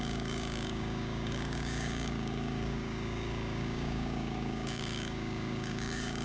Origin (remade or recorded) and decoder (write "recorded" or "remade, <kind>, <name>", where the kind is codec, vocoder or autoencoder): remade, codec, DAC